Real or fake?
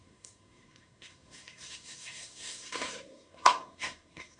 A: fake